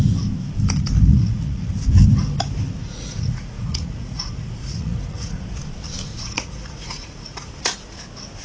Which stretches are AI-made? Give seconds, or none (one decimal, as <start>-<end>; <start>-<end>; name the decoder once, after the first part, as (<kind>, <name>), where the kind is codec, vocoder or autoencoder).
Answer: 1.1-1.7 (vocoder, Vocos); 2.8-5.4; 6.1-7.5

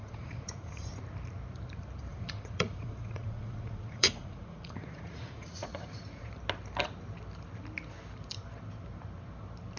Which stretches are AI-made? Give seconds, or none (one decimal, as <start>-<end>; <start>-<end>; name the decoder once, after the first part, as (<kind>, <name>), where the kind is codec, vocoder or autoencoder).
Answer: 0.0-1.0 (vocoder, Vocos); 2.1-6.4

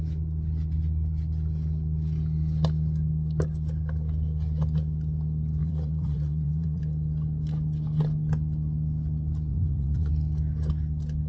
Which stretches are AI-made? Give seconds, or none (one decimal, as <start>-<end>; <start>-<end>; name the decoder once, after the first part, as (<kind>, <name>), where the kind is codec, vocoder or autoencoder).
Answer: 5.6-6.8 (vocoder, Vocos); 9.5-10.1

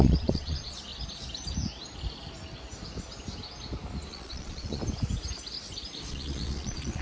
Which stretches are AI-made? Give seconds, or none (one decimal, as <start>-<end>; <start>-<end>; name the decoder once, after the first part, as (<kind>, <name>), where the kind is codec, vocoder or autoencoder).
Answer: 0.0-0.9 (vocoder, Vocos); 4.1-4.8; 6.1-7.0

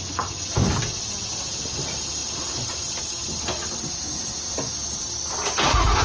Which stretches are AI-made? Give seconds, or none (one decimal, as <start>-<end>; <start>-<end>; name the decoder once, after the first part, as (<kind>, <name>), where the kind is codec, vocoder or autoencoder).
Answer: none

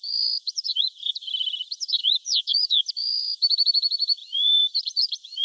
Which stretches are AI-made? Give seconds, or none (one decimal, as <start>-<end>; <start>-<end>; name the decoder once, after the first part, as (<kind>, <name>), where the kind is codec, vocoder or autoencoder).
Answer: 0.0-5.4 (vocoder, Vocos)

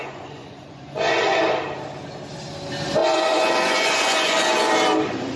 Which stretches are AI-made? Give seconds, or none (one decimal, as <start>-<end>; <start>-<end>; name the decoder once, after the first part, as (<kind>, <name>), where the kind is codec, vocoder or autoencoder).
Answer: 0.0-1.4 (vocoder, Vocos); 3.0-4.7